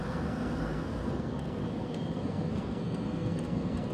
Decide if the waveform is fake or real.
fake